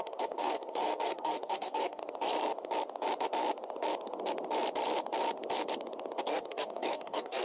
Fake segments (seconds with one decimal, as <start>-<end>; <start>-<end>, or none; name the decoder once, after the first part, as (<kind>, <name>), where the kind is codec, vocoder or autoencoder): 0.0-2.0 (codec, SNAC); 6.2-7.4